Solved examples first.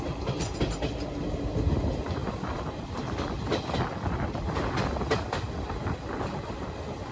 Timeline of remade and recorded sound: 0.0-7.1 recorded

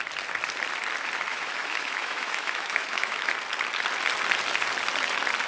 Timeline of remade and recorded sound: 0.0-1.3 recorded; 1.3-3.3 remade; 3.3-5.5 recorded

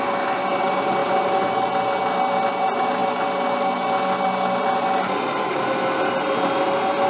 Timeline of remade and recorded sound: 0.0-7.1 recorded

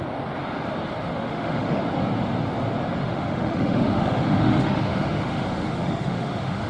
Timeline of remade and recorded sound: 0.0-1.1 recorded; 1.1-1.8 remade; 1.8-3.0 recorded; 3.0-6.7 remade

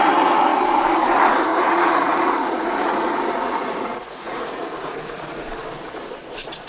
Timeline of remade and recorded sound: 0.0-1.5 recorded; 1.5-5.5 remade; 5.5-6.7 recorded

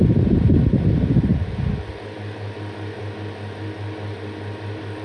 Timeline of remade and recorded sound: 0.0-5.0 recorded

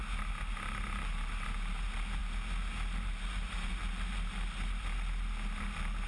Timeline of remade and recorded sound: 0.0-6.1 recorded

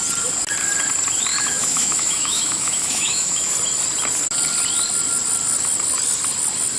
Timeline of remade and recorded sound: 0.0-1.3 recorded; 1.3-3.5 remade; 3.5-6.8 recorded